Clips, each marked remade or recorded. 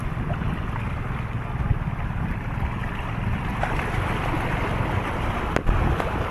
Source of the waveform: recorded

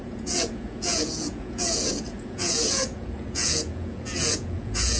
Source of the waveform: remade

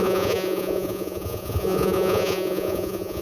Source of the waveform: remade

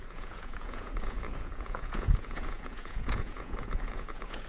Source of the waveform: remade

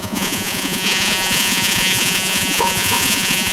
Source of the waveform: remade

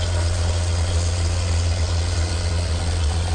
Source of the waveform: remade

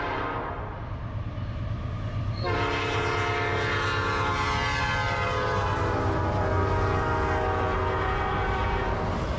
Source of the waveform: recorded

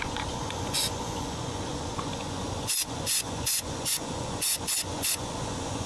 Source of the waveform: remade